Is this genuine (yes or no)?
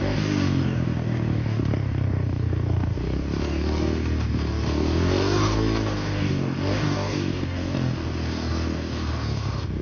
no